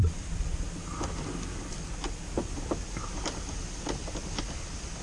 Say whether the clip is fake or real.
real